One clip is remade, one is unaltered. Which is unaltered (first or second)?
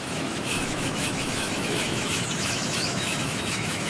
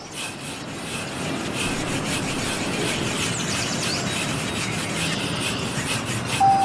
second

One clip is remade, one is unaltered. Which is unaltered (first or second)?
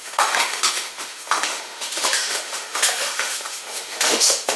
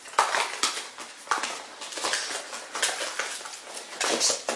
second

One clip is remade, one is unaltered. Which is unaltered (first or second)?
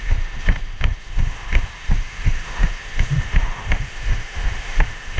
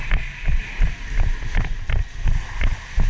second